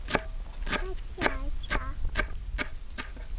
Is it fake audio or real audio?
real